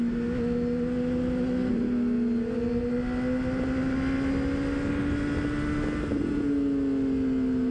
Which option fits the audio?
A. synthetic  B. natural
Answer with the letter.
B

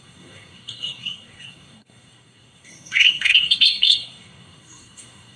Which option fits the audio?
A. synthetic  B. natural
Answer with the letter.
A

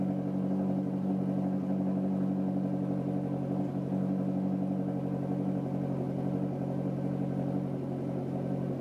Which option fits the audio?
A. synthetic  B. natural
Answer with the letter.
B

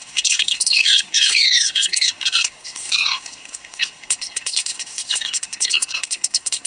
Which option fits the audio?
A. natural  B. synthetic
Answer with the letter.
B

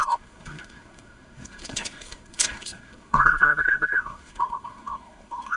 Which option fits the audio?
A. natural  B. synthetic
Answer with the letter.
B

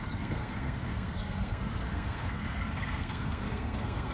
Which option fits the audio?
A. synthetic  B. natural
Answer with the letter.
A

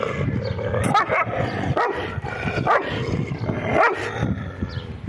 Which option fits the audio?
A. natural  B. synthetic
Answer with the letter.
A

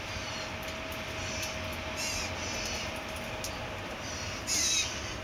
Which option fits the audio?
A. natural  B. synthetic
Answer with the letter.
A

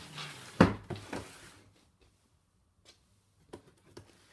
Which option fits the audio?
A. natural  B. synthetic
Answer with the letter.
A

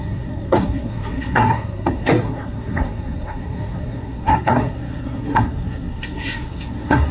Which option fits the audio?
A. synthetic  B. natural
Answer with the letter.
A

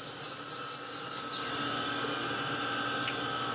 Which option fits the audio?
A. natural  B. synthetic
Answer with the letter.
A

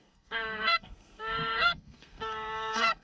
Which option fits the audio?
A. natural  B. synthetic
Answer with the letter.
B